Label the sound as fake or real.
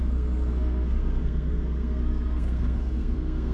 fake